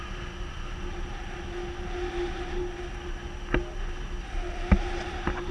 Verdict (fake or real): real